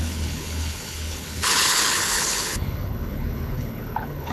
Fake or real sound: fake